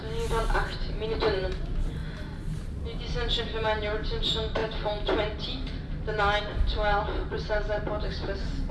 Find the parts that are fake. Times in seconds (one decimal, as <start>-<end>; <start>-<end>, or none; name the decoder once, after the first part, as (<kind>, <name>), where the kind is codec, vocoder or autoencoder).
0.0-2.0 (vocoder, BigVGAN v2); 3.4-4.6; 6.4-8.7

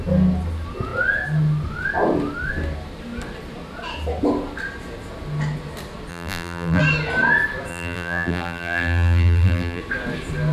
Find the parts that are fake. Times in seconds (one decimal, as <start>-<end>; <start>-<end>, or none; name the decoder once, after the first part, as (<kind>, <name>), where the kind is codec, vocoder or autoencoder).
6.1-6.8 (vocoder, BigVGAN v2); 7.7-9.8

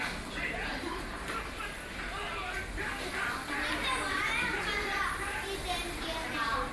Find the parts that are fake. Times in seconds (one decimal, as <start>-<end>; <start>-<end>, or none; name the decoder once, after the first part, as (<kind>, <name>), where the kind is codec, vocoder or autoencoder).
0.7-1.3 (vocoder, BigVGAN v2); 3.8-6.7

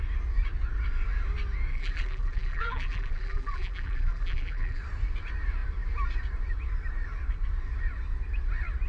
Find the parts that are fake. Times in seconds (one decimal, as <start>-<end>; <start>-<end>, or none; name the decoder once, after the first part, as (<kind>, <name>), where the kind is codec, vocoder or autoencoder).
1.7-4.8 (vocoder, BigVGAN v2)